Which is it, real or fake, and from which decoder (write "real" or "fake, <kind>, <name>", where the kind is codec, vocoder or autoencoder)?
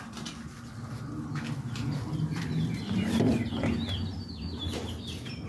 real